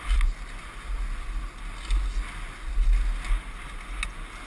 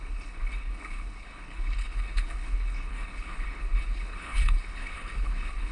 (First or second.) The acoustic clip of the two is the first